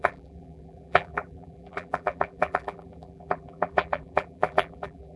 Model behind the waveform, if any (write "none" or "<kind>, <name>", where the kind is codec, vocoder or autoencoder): vocoder, BigVGAN v2